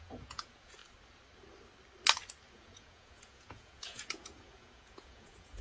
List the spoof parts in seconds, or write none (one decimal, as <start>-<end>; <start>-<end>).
0.0-0.8; 2.5-5.6